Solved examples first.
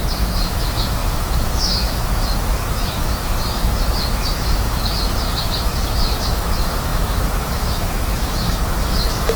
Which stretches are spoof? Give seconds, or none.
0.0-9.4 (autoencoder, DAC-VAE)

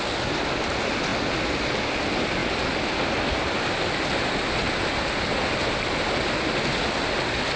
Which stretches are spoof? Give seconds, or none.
none

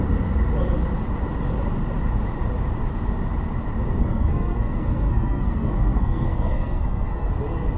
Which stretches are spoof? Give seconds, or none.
4.0-7.3 (codec, SNAC)